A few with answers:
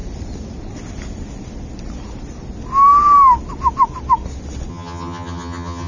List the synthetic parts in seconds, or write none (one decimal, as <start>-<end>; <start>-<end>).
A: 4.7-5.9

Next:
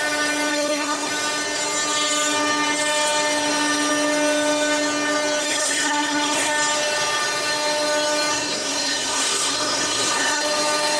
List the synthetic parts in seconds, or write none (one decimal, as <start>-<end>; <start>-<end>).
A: 0.5-1.1; 5.4-6.5; 8.3-10.4

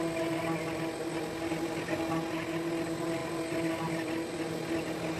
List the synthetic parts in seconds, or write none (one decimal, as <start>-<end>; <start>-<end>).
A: none

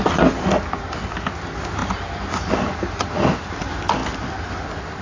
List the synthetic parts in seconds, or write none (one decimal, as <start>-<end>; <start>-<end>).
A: none